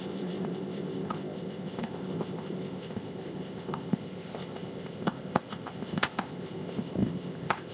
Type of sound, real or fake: fake